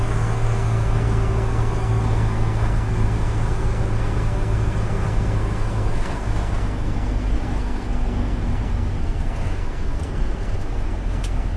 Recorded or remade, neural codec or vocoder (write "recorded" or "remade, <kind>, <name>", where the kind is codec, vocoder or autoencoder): remade, codec, SNAC